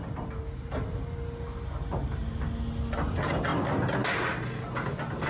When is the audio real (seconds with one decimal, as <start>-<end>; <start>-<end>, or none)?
0.0-5.3

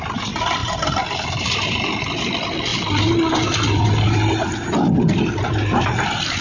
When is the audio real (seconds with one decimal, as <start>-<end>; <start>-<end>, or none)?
0.0-6.4